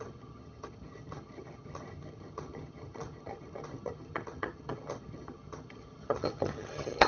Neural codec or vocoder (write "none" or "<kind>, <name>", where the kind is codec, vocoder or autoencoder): vocoder, HiFi-GAN